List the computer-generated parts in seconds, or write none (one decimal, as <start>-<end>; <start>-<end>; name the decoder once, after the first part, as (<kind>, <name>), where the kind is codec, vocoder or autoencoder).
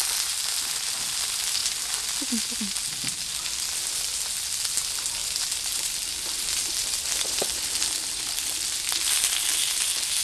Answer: 5.2-8.3 (vocoder, BigVGAN v2)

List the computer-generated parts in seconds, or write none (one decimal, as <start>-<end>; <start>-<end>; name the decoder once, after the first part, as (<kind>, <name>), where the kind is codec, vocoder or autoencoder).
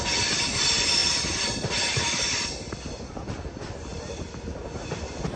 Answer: 1.0-4.2 (vocoder, BigVGAN v2)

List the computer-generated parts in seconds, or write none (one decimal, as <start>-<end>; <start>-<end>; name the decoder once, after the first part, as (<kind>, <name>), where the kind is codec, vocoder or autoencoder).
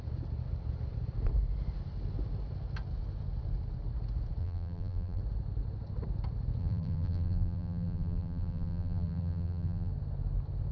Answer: 4.4-5.2 (vocoder, BigVGAN v2); 6.6-9.9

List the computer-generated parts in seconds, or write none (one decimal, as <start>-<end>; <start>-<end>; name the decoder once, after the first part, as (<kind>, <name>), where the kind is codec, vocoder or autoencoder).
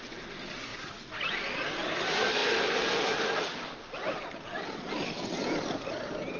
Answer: 0.7-1.3 (vocoder, BigVGAN v2); 2.4-4.9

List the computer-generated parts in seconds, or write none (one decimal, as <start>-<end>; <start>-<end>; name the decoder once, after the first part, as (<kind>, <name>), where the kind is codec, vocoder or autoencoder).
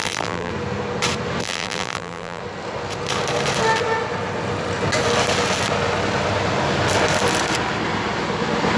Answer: 0.0-0.5 (vocoder, BigVGAN v2); 1.4-2.4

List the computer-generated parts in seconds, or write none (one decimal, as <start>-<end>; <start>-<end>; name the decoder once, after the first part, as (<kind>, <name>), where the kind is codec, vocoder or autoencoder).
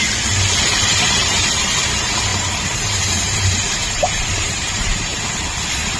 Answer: 2.3-5.2 (vocoder, BigVGAN v2)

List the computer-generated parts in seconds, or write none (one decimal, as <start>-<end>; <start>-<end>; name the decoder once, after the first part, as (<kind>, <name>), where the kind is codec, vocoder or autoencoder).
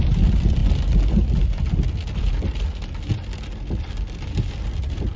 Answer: 0.0-0.6 (vocoder, BigVGAN v2); 3.7-5.2